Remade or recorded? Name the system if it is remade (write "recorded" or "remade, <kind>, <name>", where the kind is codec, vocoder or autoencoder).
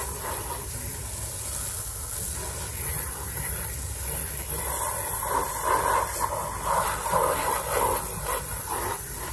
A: recorded